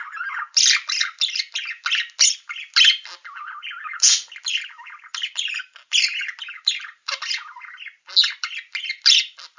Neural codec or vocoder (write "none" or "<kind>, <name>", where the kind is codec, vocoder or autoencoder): none